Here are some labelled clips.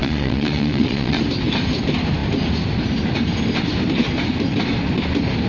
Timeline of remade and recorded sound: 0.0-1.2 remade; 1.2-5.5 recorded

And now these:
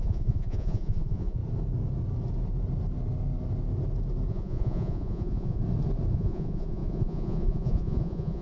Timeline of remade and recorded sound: 0.0-1.4 remade; 1.4-4.3 recorded; 4.3-5.6 remade; 5.6-6.1 recorded; 6.1-8.4 remade

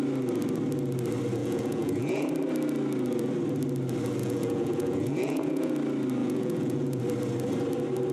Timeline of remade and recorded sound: 0.0-1.4 recorded; 1.4-2.3 remade; 2.3-4.2 recorded; 4.2-5.7 remade; 5.7-6.2 recorded; 6.2-7.0 remade; 7.0-8.1 recorded

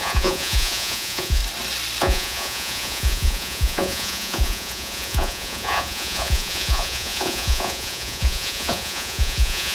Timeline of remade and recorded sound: 0.0-1.4 remade; 1.4-2.0 recorded; 2.0-9.7 remade

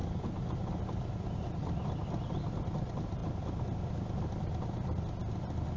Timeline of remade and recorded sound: 0.0-5.8 recorded

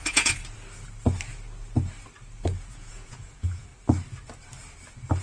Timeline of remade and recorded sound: 0.0-0.4 remade; 0.4-2.7 recorded; 2.7-3.7 remade; 3.7-5.2 recorded

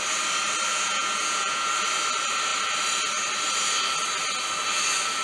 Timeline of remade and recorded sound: 0.0-0.7 recorded; 0.7-1.7 remade; 1.7-5.2 recorded